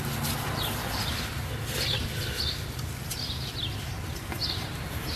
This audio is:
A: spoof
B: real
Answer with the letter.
B